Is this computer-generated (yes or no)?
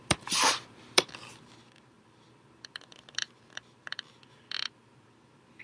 yes